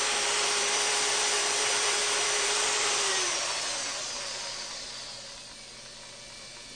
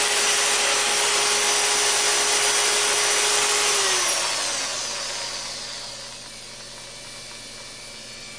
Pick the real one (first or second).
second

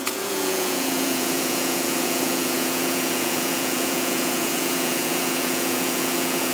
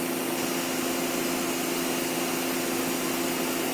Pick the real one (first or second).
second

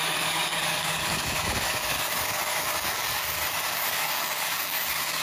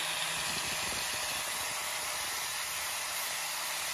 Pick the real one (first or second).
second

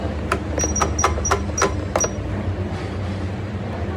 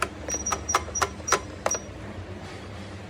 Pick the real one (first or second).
first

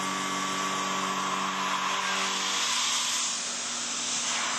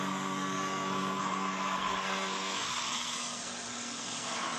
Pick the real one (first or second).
first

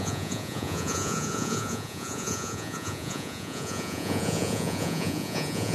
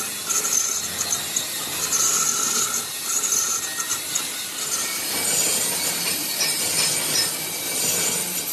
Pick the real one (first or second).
second